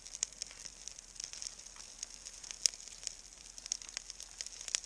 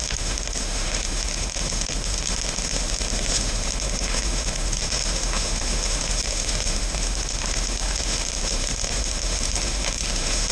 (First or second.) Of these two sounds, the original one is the first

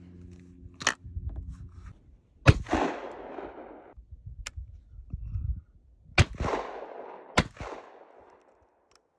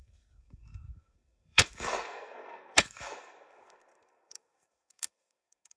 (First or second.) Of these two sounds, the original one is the first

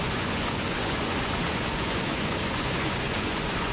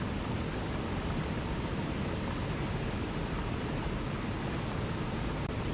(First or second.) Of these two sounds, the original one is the second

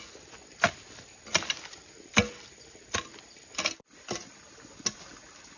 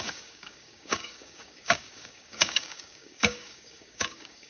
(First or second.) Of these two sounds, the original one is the first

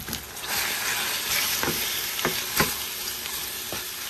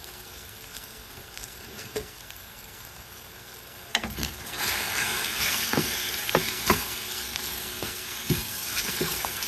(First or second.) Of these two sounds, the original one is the first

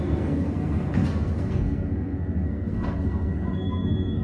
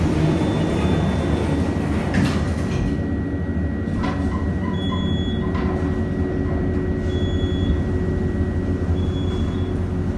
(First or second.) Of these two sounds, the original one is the second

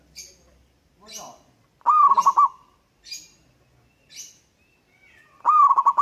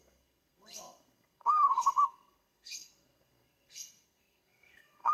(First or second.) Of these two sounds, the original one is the first